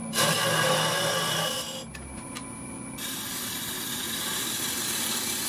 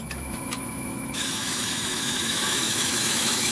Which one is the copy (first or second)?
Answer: second